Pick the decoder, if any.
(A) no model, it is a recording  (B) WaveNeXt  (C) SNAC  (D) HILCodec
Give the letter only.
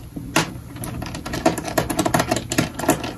A